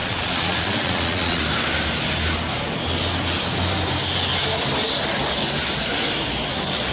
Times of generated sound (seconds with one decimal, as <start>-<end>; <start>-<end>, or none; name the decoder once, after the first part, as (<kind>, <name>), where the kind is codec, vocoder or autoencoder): 0.0-1.4 (vocoder, Vocos)